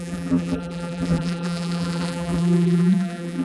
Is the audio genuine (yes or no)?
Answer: no